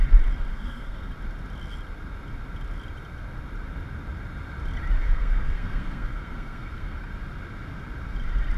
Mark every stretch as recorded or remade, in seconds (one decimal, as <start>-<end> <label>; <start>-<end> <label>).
0.0-0.5 recorded; 0.5-1.1 remade; 1.1-5.0 recorded; 5.0-7.1 remade; 7.1-8.6 recorded